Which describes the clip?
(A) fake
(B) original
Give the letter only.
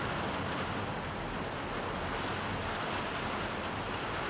B